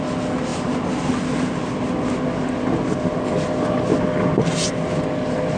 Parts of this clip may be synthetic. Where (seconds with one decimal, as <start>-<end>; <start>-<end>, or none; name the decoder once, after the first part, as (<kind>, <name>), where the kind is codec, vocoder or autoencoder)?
none